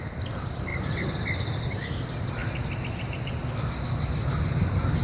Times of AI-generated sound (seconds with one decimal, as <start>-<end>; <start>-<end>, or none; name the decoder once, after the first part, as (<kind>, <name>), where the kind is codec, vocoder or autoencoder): 0.0-0.7 (vocoder, BigVGAN v2); 1.6-2.4; 2.9-3.4; 4.3-5.0